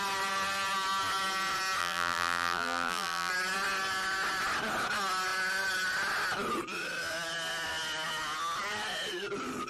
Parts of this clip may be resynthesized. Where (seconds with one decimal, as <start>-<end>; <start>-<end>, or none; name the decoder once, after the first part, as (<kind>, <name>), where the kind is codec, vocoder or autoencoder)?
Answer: 1.8-3.3 (vocoder, BigVGAN v2)